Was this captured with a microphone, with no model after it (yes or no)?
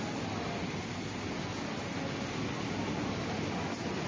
yes